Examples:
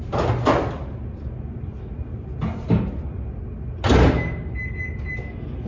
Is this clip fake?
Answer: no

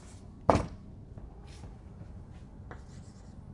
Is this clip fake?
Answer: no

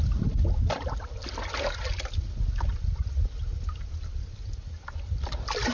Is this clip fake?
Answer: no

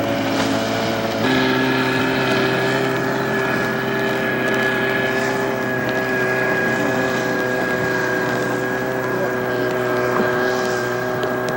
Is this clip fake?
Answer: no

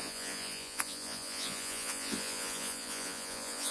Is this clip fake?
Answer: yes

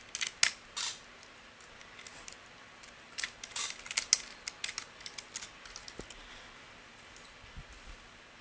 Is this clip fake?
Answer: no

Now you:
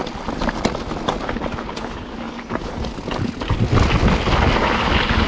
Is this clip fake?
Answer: no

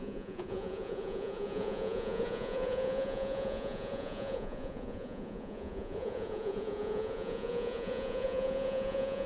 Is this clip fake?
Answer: yes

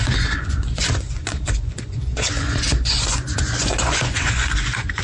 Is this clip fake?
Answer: yes